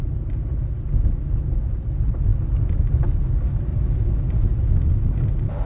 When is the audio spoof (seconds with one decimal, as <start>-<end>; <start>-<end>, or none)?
3.7-4.6